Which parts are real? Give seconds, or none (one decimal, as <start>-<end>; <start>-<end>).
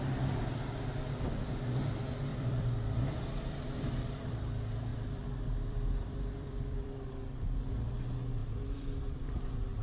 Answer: 0.0-2.3; 4.5-4.9; 7.7-8.4